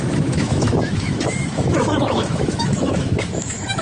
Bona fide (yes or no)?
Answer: no